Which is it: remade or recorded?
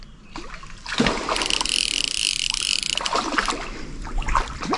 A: recorded